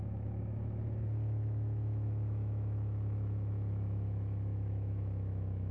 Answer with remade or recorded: remade